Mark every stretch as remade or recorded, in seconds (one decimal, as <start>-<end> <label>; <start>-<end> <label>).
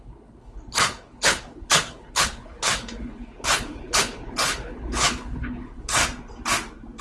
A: 0.0-6.0 remade; 6.0-7.0 recorded